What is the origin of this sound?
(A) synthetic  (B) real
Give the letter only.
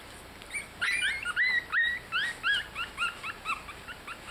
B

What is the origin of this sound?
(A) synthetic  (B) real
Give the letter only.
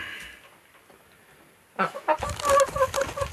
B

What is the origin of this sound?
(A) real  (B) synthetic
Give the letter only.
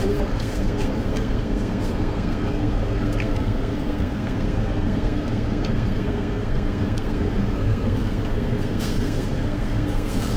B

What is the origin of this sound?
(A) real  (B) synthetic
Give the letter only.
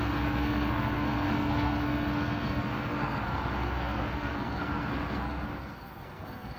B